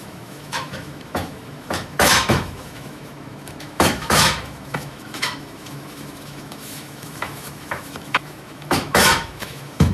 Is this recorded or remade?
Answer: remade